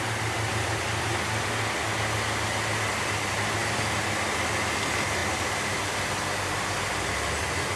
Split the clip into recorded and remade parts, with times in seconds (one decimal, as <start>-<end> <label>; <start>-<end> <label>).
0.0-7.8 recorded